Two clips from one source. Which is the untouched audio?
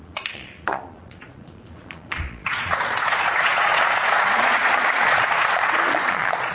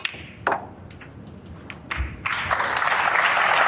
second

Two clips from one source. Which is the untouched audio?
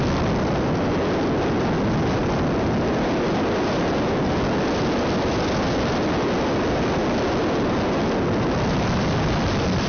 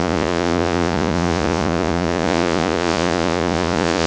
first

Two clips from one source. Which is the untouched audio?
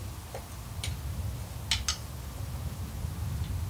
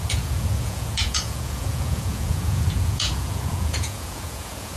first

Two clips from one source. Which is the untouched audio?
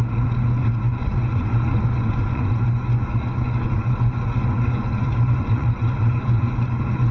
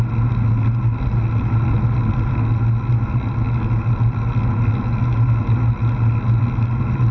second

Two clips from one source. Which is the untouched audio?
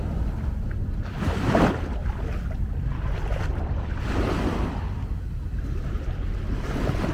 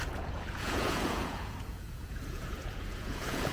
first